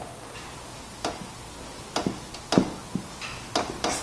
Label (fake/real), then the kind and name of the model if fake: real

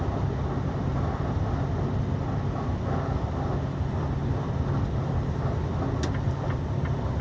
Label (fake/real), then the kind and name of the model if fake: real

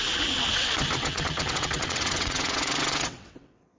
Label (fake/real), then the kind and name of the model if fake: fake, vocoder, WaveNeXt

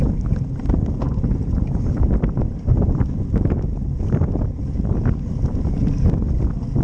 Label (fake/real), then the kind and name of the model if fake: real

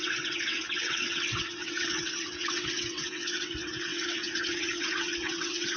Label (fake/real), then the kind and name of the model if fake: fake, vocoder, WaveNeXt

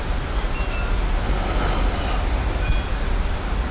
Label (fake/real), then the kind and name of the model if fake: real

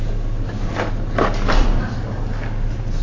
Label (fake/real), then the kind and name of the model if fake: real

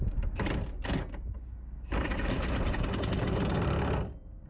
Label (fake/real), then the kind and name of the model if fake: real